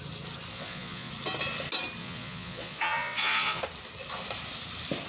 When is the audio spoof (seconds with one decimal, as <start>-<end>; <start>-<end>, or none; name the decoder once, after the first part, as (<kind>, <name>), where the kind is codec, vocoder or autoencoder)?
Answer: 0.5-1.1 (vocoder, Vocos); 2.0-3.6